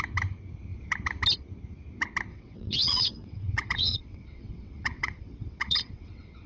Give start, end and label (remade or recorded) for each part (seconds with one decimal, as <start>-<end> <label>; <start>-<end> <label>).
0.0-2.3 recorded; 2.3-6.5 remade